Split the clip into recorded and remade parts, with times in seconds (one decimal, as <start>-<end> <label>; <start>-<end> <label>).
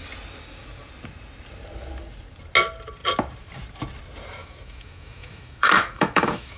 0.0-4.4 recorded; 4.4-6.6 remade